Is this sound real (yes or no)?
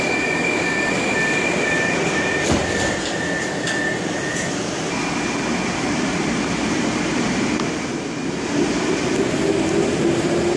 yes